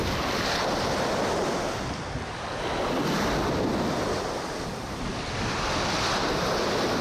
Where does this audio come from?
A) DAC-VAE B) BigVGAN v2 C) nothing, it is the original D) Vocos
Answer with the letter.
C